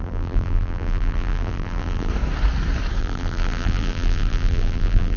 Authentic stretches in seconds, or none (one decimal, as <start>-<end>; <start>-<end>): 2.1-3.0